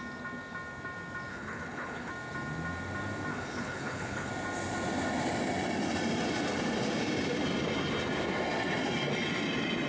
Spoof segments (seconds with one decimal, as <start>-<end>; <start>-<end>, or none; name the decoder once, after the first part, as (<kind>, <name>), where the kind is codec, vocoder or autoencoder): 1.3-2.1 (codec, HILCodec); 3.3-4.3